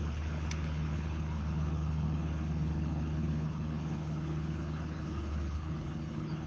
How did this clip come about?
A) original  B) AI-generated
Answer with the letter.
B